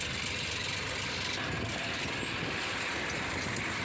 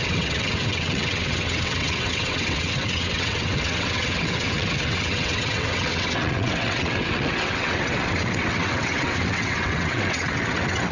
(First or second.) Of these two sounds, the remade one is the second